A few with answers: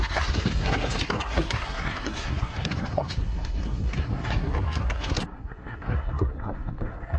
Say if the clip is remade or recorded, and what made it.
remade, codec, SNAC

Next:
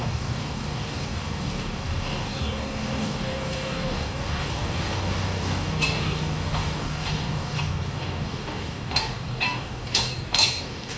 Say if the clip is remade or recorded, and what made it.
remade, codec, DAC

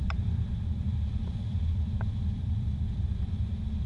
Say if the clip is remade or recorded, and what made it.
remade, vocoder, BigVGAN v2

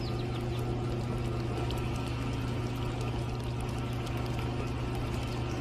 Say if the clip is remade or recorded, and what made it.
recorded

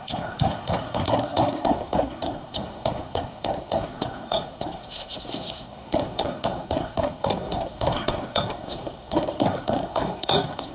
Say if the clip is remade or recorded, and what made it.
remade, codec, SNAC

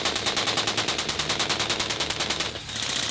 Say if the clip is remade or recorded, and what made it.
recorded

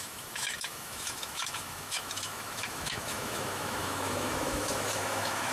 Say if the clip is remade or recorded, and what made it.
remade, autoencoder, DAC-VAE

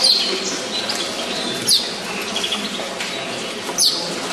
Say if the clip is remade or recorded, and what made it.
recorded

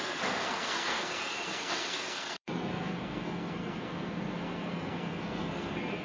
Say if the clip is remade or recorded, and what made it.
remade, codec, SNAC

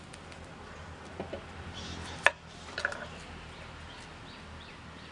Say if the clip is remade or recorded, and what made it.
recorded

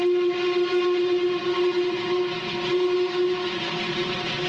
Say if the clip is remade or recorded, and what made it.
recorded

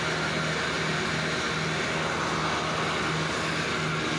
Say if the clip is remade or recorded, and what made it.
recorded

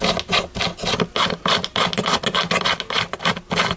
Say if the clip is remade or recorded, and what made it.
recorded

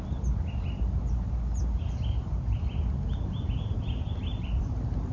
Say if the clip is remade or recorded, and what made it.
recorded